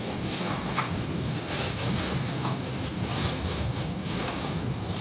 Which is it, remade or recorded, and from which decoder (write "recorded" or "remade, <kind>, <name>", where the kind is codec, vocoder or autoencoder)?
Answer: remade, codec, DAC